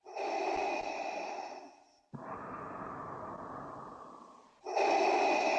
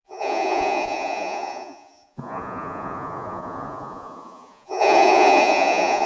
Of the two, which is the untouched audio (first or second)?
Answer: first